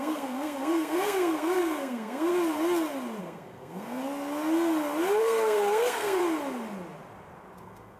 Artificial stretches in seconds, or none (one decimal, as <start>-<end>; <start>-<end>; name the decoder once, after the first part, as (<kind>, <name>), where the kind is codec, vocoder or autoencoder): 0.0-2.3 (codec, SNAC); 3.2-4.0; 5.2-6.2; 7.6-8.0